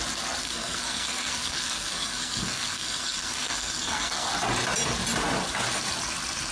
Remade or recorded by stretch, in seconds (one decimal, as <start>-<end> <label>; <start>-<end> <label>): 0.0-0.4 recorded; 0.4-4.3 remade; 4.3-6.5 recorded